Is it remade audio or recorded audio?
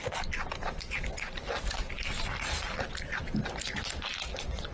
recorded